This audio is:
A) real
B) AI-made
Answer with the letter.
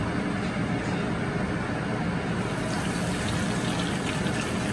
A